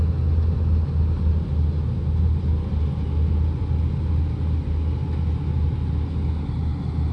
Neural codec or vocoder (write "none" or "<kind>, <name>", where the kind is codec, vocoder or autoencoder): none